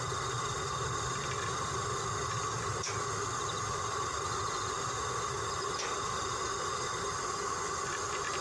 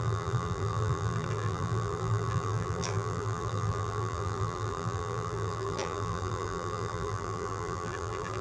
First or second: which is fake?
second